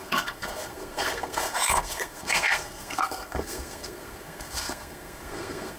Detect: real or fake fake